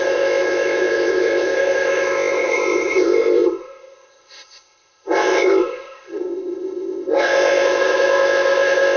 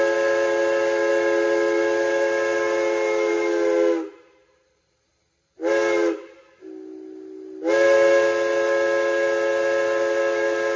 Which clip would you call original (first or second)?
second